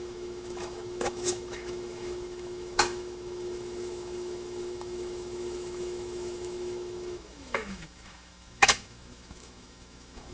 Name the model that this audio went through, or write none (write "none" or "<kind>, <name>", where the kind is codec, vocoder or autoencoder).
autoencoder, DAC-VAE